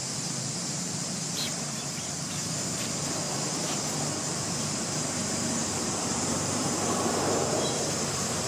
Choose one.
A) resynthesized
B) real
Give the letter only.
A